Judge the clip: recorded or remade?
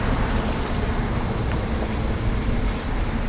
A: remade